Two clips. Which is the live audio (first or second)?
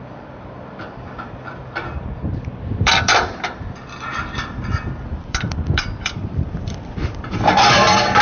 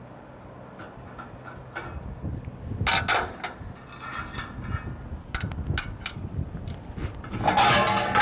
second